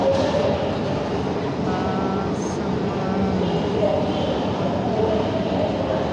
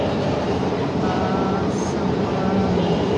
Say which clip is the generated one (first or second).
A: second